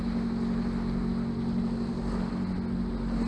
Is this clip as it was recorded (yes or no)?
yes